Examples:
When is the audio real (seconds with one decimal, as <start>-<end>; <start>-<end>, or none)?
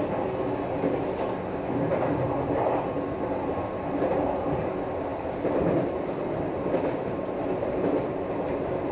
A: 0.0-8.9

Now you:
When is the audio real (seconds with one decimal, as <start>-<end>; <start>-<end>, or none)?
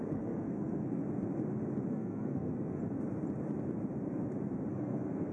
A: 1.0-1.9; 2.8-4.7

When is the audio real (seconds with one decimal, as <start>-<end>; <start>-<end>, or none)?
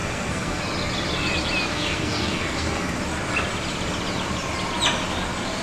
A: 0.6-1.7; 3.0-5.6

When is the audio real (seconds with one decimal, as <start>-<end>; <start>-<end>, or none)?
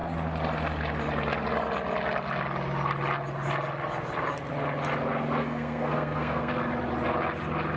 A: 0.0-5.4; 6.5-7.8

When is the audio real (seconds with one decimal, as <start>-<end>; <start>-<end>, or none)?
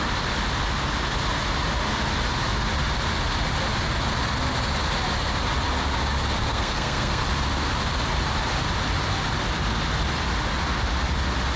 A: 0.0-6.5; 7.2-11.6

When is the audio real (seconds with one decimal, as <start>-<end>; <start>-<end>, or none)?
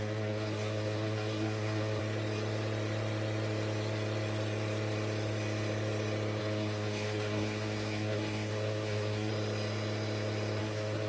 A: 2.0-6.4; 9.3-10.6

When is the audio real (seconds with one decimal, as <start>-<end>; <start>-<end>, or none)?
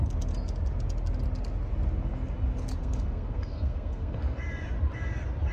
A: 0.0-2.8; 4.2-5.5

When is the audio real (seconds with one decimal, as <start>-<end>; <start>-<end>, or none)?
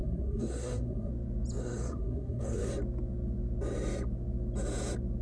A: 1.1-1.6; 2.7-5.2